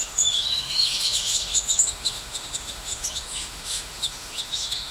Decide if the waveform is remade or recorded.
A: remade